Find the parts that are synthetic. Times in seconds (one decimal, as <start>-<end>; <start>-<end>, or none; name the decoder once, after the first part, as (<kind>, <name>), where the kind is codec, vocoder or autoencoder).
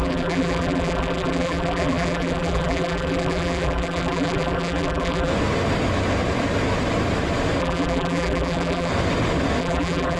0.0-5.3 (vocoder, BigVGAN v2); 7.6-8.9; 9.6-10.2